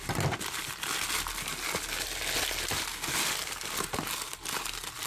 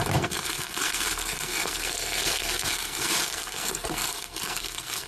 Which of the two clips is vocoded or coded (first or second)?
second